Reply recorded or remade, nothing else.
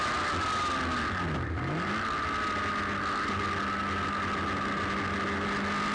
recorded